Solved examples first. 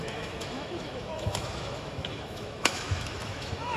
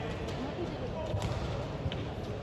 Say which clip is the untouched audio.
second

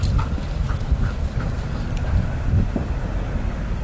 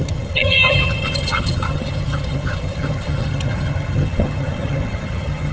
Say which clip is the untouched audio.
first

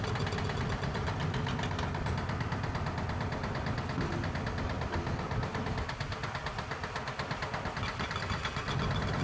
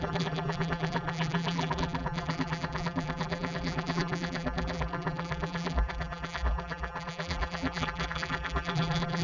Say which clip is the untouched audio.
first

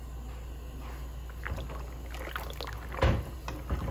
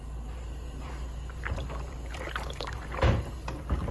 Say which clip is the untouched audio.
first